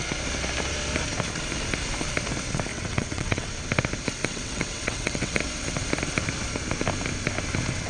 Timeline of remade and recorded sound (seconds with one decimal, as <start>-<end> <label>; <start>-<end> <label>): 0.0-2.7 recorded; 2.7-3.5 remade; 3.5-4.2 recorded; 4.2-5.4 remade; 5.4-7.9 recorded